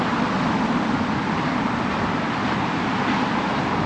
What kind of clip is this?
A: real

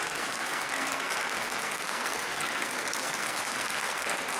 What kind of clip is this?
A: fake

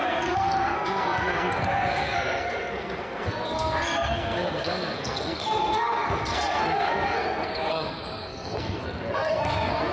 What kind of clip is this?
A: fake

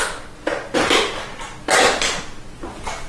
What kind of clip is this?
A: real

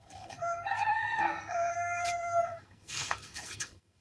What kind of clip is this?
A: fake